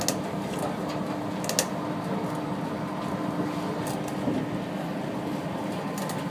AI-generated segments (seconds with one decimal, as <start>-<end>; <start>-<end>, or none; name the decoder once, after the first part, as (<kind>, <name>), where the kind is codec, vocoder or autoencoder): none